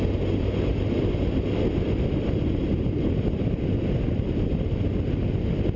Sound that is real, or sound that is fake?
real